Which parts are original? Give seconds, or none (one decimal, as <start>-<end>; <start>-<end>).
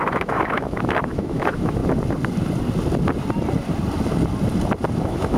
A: 1.8-5.0